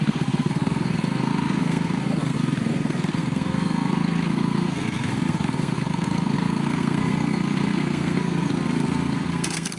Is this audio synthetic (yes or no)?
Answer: yes